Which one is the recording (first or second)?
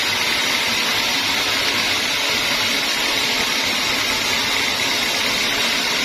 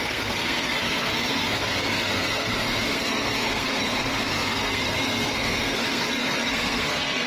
first